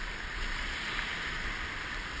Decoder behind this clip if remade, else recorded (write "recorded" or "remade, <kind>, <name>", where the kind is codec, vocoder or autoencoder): recorded